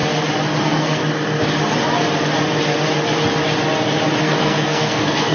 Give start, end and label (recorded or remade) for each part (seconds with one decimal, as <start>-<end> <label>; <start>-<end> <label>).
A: 0.0-0.6 recorded; 0.6-1.0 remade; 1.0-4.2 recorded; 4.2-5.3 remade